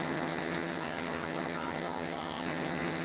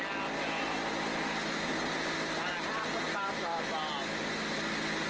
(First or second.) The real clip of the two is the second